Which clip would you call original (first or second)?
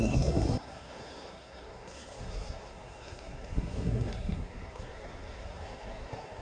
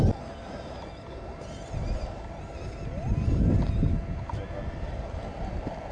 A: second